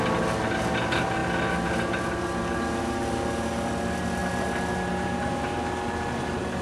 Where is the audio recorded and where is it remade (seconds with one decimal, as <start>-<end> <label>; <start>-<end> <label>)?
0.0-6.6 recorded

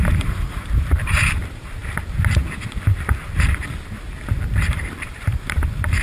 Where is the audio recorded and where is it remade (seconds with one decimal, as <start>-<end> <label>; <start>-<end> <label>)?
0.0-1.8 remade; 1.8-4.5 recorded; 4.5-6.0 remade

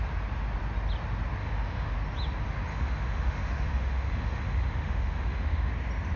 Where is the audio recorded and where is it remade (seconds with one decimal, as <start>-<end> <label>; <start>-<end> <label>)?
0.0-1.4 recorded; 1.4-1.9 remade; 1.9-2.7 recorded; 2.7-5.7 remade; 5.7-6.2 recorded

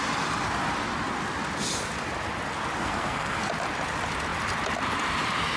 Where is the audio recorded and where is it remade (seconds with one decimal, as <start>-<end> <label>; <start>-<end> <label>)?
0.0-2.8 recorded; 2.8-3.5 remade; 3.5-5.6 recorded

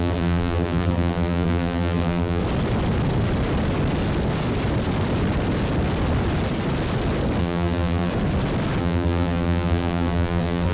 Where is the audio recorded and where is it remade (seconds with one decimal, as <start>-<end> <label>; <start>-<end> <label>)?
0.0-2.4 remade; 2.4-7.4 recorded; 7.4-8.1 remade; 8.1-8.8 recorded; 8.8-10.7 remade